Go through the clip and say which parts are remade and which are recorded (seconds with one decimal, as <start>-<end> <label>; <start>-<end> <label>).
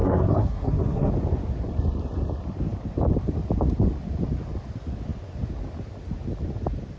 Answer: 0.0-1.1 remade; 1.1-7.0 recorded